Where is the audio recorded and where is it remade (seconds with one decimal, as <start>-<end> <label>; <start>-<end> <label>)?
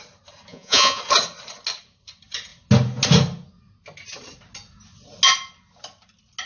0.0-0.5 recorded; 0.5-1.0 remade; 1.0-6.5 recorded